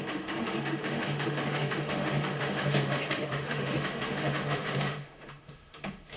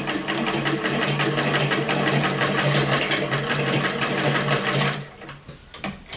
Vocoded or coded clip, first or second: first